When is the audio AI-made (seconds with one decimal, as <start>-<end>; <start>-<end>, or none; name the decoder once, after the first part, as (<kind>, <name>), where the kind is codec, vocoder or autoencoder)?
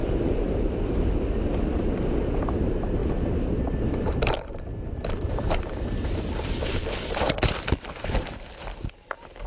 2.3-4.7 (vocoder, BigVGAN v2); 5.3-9.5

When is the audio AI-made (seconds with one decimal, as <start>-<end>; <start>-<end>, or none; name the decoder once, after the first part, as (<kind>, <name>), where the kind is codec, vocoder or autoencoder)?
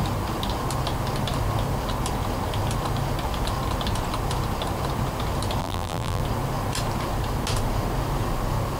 5.6-6.2 (vocoder, BigVGAN v2)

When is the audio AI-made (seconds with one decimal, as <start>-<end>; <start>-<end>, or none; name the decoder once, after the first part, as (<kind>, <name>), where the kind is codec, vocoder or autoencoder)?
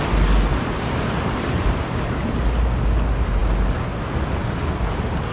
0.5-2.1 (vocoder, BigVGAN v2)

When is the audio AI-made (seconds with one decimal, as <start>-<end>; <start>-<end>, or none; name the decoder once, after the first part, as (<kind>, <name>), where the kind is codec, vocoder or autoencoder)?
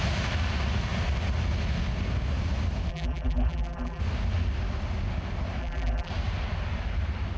2.9-4.0 (vocoder, BigVGAN v2); 5.6-6.1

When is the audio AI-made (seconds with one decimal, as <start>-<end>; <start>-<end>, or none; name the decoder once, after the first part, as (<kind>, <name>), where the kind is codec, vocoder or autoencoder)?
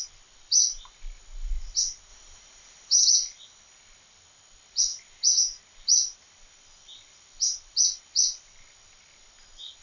2.1-3.0 (vocoder, BigVGAN v2)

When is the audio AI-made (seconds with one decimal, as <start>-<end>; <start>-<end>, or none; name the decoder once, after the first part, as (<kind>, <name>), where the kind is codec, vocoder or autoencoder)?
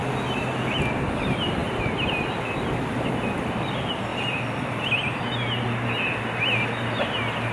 0.0-0.8 (vocoder, BigVGAN v2); 4.1-5.2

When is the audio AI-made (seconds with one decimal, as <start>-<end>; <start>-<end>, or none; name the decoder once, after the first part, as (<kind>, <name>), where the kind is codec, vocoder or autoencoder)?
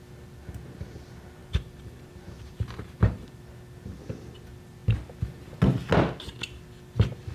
1.4-3.4 (vocoder, BigVGAN v2)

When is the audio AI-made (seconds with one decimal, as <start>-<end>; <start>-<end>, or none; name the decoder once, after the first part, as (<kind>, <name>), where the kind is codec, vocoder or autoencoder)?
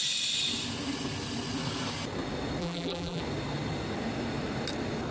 2.6-3.2 (vocoder, BigVGAN v2)